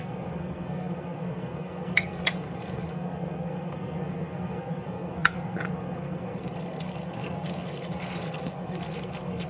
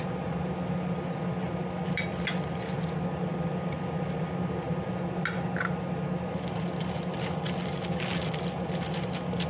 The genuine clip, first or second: second